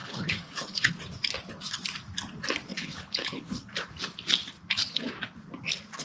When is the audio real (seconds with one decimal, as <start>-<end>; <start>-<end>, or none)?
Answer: 0.9-2.7; 3.7-6.0